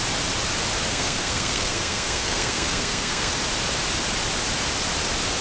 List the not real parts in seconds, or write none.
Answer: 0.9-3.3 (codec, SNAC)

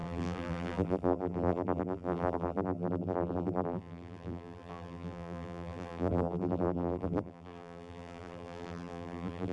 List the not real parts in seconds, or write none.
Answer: 0.0-9.5 (vocoder, BigVGAN v2)

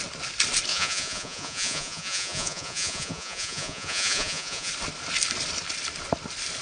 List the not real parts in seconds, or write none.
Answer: 0.7-4.7 (vocoder, Vocos)

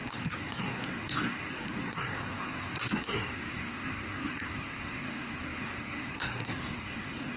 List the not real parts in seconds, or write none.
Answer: 0.0-7.4 (codec, SNAC)

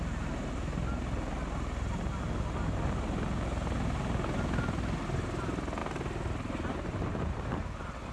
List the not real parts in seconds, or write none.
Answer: 5.8-7.5 (vocoder, BigVGAN v2)

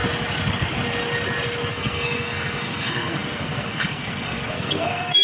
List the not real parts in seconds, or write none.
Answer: 1.7-5.2 (codec, SNAC)

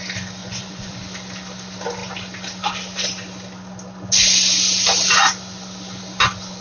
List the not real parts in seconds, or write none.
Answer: 0.4-1.0 (vocoder, Vocos)

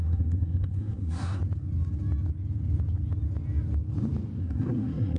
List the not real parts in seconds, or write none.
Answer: 0.0-1.4 (codec, SNAC); 4.4-5.2